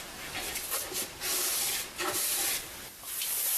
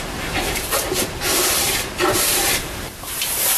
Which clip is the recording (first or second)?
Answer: first